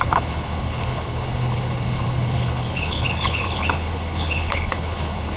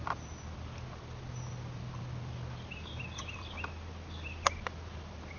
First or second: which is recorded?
second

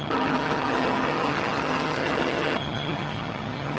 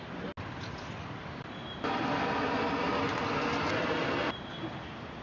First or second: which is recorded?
second